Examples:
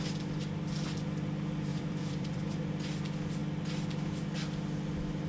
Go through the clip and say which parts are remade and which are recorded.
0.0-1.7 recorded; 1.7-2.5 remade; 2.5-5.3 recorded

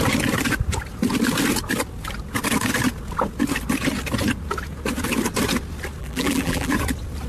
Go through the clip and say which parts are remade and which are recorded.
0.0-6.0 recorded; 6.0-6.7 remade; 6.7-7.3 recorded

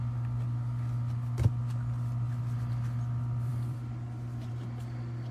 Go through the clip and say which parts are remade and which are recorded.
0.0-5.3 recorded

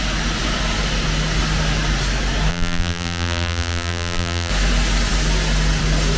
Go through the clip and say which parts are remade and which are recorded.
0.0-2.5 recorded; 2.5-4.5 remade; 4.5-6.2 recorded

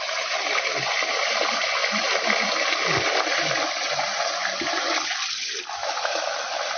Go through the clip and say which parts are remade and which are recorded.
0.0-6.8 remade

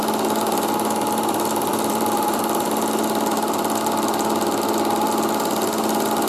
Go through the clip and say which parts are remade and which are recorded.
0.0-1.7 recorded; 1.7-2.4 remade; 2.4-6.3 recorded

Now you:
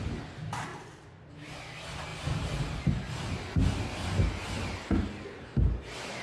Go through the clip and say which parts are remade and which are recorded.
0.0-0.7 recorded; 0.7-1.3 remade; 1.3-6.2 recorded

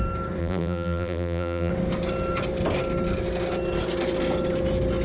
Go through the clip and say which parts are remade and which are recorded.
0.0-0.4 recorded; 0.4-1.7 remade; 1.7-5.0 recorded